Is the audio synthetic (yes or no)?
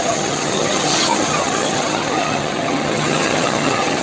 yes